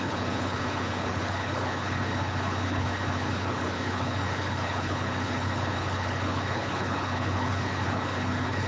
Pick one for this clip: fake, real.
fake